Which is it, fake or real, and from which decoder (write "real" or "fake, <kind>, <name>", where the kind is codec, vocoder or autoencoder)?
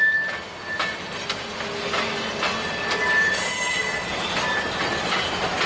real